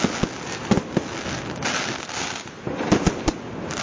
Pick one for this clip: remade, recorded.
recorded